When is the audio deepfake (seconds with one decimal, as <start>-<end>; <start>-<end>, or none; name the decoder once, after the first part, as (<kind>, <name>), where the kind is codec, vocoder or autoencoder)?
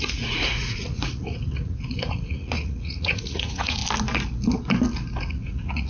0.0-3.8 (vocoder, Vocos); 5.2-5.9